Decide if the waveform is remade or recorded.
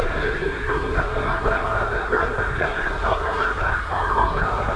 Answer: remade